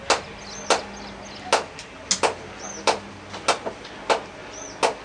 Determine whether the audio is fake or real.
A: real